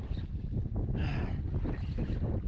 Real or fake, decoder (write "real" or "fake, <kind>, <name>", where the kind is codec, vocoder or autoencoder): real